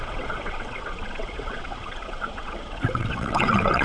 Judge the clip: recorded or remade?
remade